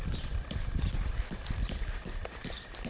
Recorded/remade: recorded